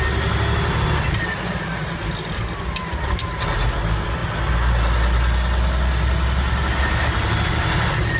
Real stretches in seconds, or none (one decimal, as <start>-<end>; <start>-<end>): 0.0-8.2